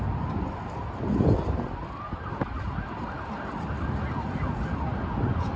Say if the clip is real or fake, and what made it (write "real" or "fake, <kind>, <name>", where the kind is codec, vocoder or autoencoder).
real